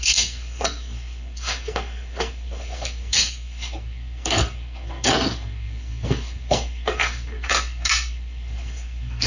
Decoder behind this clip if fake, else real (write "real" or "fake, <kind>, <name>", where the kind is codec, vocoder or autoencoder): fake, codec, SNAC